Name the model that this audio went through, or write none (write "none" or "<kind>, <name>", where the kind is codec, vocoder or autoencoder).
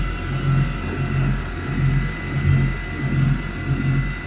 none